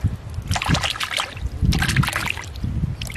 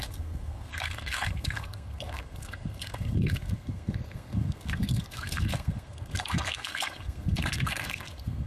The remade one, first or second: second